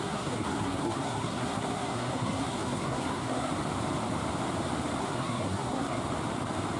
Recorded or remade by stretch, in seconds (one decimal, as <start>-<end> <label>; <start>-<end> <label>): 0.0-3.5 remade; 3.5-5.0 recorded; 5.0-6.0 remade; 6.0-6.8 recorded

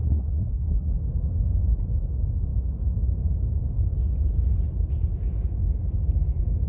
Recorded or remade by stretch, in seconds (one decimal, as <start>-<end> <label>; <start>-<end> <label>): 0.0-0.9 remade; 0.9-6.7 recorded

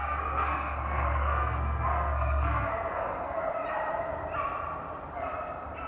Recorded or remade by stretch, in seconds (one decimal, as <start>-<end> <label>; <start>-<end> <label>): 0.0-3.5 remade; 3.5-5.9 recorded

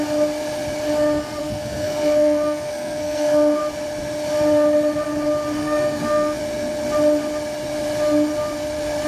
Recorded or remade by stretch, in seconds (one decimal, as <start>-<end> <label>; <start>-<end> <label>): 0.0-1.4 recorded; 1.4-3.6 remade; 3.6-5.6 recorded; 5.6-6.4 remade; 6.4-9.1 recorded

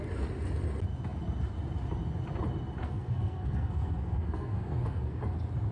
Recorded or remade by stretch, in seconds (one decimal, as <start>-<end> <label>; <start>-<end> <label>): 0.0-2.8 recorded; 2.8-5.2 remade; 5.2-5.7 recorded